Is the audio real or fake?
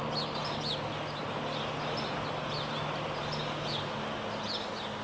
real